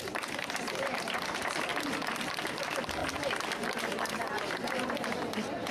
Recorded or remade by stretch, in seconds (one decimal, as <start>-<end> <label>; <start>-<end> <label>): 0.0-1.7 remade; 1.7-2.6 recorded; 2.6-3.0 remade; 3.0-5.1 recorded; 5.1-5.7 remade